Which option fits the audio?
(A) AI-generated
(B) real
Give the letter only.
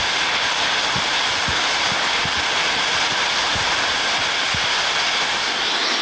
B